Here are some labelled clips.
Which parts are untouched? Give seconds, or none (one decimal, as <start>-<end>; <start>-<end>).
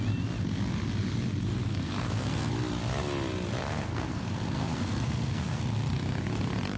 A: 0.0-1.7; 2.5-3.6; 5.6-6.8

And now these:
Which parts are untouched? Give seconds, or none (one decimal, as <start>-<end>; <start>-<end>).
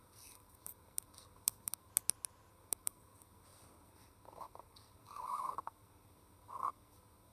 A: 1.9-2.5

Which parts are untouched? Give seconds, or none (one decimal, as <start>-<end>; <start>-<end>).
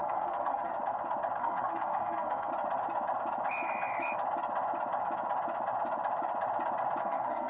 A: 0.7-1.4; 2.5-7.0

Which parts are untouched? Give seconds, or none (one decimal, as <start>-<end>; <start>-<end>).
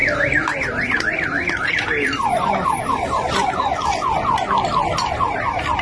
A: 0.0-5.8